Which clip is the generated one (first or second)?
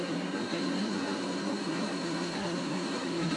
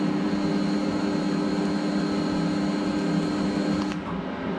first